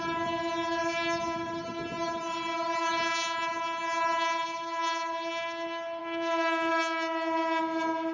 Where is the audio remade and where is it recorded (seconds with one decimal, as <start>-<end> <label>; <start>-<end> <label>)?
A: 0.0-8.1 recorded